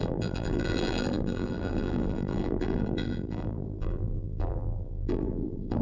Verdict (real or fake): fake